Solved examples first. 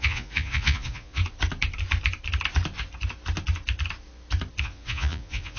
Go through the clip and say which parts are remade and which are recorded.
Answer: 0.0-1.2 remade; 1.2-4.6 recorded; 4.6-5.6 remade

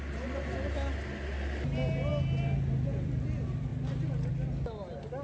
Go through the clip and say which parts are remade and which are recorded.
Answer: 0.0-5.2 recorded

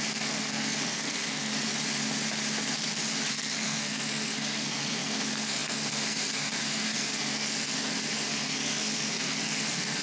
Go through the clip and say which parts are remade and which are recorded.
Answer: 0.0-1.5 remade; 1.5-3.3 recorded; 3.3-10.0 remade

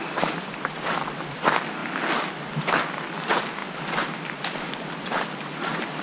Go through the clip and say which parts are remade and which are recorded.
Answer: 0.0-6.0 recorded

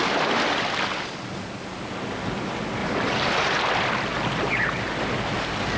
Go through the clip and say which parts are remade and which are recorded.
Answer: 0.0-2.8 recorded; 2.8-3.6 remade; 3.6-5.8 recorded

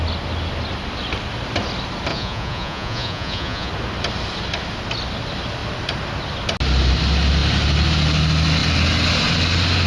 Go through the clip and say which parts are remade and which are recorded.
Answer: 0.0-2.1 recorded; 2.1-3.7 remade; 3.7-9.9 recorded